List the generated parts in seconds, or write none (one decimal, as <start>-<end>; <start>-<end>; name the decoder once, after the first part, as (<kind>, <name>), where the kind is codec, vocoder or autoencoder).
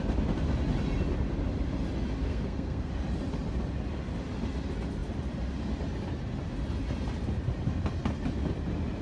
2.2-2.9 (codec, SNAC)